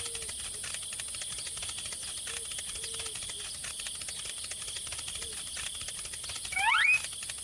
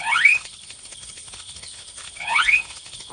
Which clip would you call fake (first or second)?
second